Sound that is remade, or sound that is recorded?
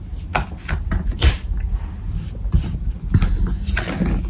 recorded